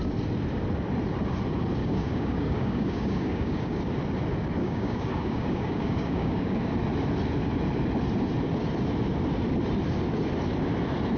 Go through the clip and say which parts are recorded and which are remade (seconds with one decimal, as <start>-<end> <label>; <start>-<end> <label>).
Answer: 0.0-1.8 recorded; 1.8-3.8 remade; 3.8-4.6 recorded; 4.6-6.6 remade; 6.6-11.2 recorded